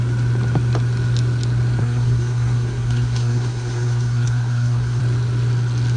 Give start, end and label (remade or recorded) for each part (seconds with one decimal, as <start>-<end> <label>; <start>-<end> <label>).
0.0-1.8 recorded; 1.8-5.0 remade; 5.0-6.0 recorded